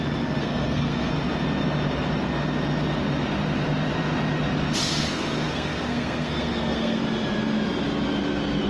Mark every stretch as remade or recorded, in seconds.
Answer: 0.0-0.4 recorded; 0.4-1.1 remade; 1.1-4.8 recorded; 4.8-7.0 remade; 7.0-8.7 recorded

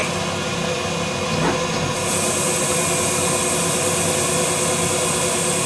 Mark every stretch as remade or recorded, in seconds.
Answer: 0.0-5.7 recorded